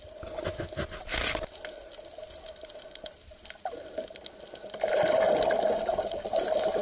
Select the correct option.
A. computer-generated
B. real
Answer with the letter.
B